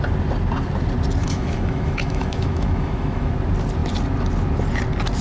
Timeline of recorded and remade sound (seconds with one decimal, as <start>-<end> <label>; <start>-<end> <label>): 0.0-1.2 recorded; 1.2-3.3 remade; 3.3-5.2 recorded